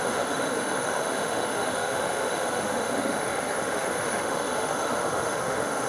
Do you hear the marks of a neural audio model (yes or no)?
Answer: yes